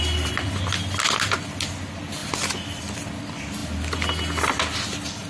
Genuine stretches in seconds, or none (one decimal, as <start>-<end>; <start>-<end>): 0.0-5.3